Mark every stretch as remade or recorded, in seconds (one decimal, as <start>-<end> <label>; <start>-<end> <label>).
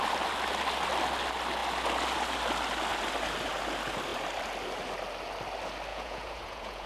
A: 0.0-5.9 recorded; 5.9-6.9 remade